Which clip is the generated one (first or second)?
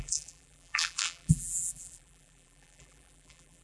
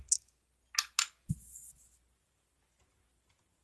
first